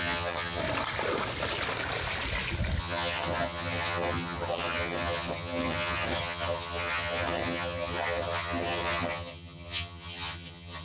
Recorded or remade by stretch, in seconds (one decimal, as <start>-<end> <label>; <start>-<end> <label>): 0.0-0.6 remade; 0.6-2.8 recorded; 2.8-10.8 remade